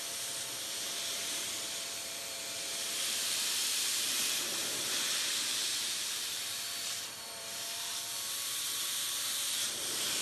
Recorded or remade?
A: remade